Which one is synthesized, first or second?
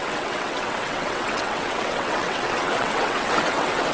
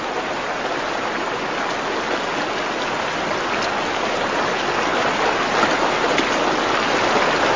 first